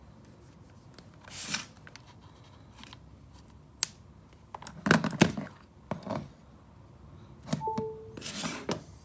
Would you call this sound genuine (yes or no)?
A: yes